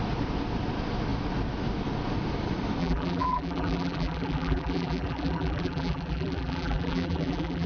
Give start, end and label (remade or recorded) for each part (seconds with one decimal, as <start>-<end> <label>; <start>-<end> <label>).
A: 0.0-2.8 recorded; 2.8-7.7 remade